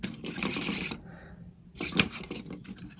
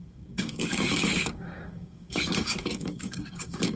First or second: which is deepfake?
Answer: second